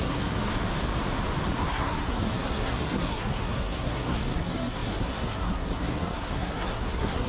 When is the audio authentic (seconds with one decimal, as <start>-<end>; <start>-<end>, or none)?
0.5-1.7